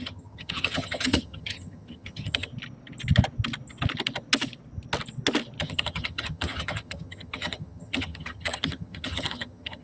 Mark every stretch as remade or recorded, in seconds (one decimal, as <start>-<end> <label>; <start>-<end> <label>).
0.0-2.5 remade; 2.5-5.6 recorded; 5.6-9.8 remade